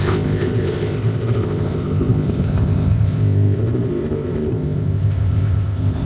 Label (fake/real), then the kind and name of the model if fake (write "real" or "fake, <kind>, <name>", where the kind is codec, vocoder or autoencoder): fake, codec, ZipCodec